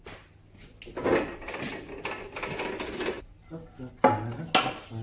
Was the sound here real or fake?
real